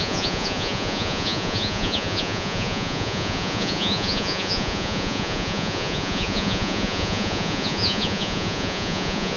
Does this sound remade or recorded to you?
remade